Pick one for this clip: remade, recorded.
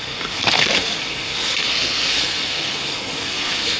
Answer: remade